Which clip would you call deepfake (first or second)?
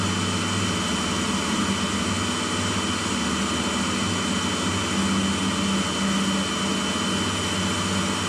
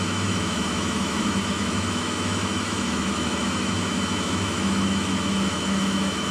second